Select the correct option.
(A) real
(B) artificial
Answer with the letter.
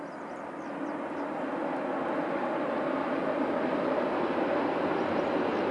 A